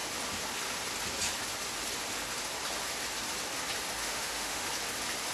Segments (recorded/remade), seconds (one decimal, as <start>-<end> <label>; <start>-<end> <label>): 0.0-4.0 recorded; 4.0-4.7 remade; 4.7-5.3 recorded